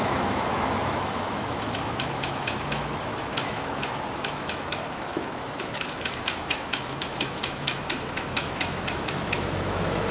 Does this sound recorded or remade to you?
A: remade